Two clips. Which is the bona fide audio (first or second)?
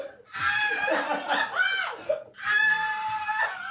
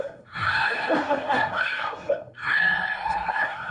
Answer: first